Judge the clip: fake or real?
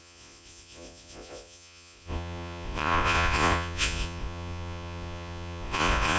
fake